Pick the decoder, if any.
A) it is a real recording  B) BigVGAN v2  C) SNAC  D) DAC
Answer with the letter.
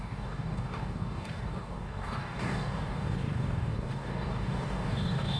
D